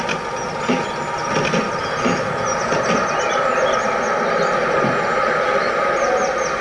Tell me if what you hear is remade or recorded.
recorded